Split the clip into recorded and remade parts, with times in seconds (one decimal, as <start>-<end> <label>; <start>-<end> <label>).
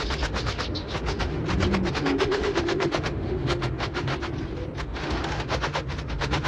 0.0-1.4 remade; 1.4-1.9 recorded; 1.9-4.1 remade; 4.1-4.8 recorded; 4.8-6.5 remade